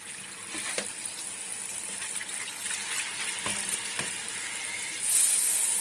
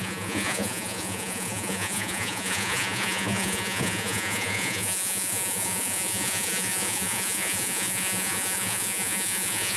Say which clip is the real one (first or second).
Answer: first